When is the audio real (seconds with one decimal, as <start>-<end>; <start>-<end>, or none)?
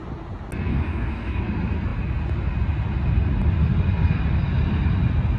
0.0-0.7; 1.4-5.4